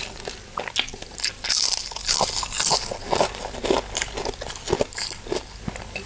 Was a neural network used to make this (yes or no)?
no